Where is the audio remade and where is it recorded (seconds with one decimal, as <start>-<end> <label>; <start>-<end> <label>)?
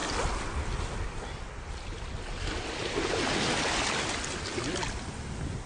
0.0-5.7 recorded